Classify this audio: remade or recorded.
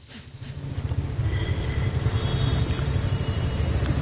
recorded